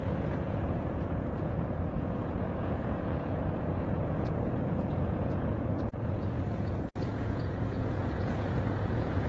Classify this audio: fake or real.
fake